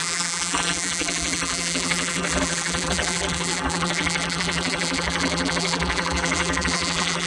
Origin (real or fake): fake